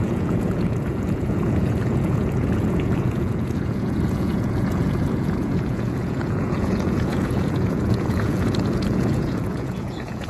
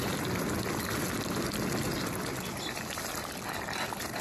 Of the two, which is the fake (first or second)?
first